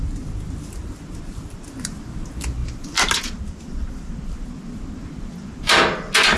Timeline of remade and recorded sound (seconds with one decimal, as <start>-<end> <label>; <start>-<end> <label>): 0.0-6.4 recorded

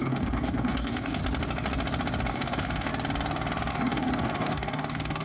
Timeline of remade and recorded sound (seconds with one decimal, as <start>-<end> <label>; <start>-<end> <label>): 0.0-1.2 remade; 1.2-2.3 recorded; 2.3-2.9 remade; 2.9-3.7 recorded; 3.7-5.2 remade

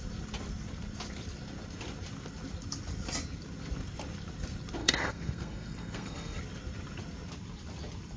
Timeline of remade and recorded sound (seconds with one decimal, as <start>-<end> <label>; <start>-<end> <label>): 0.0-4.8 recorded; 4.8-6.4 remade; 6.4-8.2 recorded

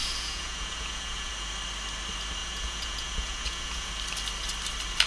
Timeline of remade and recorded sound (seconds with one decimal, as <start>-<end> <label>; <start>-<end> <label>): 0.0-1.3 remade; 1.3-2.4 recorded; 2.4-3.9 remade; 3.9-5.1 recorded

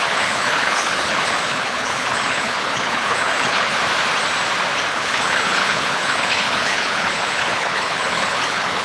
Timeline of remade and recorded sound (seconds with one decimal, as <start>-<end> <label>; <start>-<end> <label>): 0.0-3.7 remade; 3.7-4.9 recorded; 4.9-8.8 remade

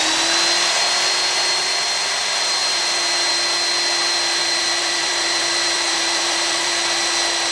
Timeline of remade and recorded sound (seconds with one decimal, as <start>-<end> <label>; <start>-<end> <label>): 0.0-4.4 recorded; 4.4-6.7 remade; 6.7-7.5 recorded

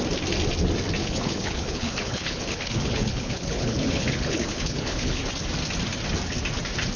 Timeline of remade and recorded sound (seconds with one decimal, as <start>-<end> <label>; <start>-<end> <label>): 0.0-1.0 recorded; 1.0-5.2 remade; 5.2-7.0 recorded